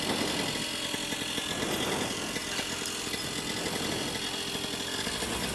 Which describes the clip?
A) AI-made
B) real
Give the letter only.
B